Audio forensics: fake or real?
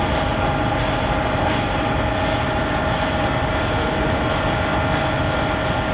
real